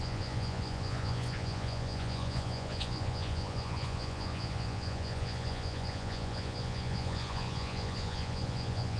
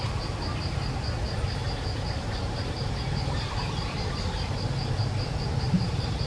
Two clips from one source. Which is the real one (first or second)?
second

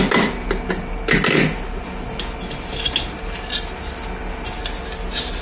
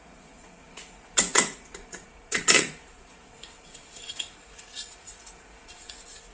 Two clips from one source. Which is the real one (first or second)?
first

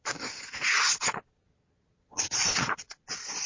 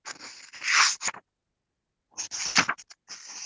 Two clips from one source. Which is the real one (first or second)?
second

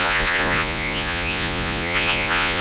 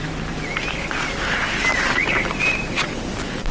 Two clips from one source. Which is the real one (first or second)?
second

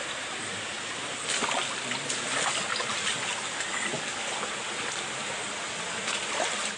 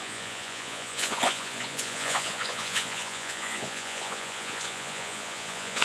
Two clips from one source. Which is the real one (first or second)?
first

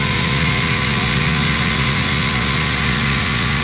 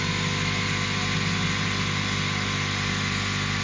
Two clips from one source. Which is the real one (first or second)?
second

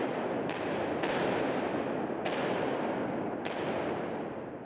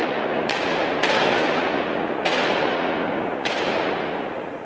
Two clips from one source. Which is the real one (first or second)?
first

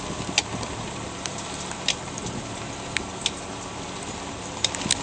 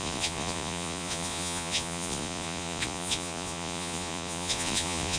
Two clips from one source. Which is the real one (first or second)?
first